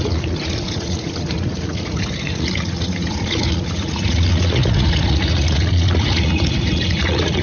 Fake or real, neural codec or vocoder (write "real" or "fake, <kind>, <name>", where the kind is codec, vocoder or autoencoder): fake, vocoder, Vocos